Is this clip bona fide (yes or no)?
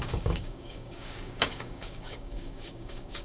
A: no